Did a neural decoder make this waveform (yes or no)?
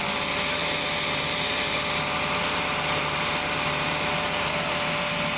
no